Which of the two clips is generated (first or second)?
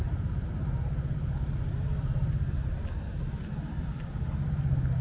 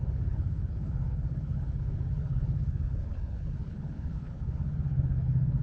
second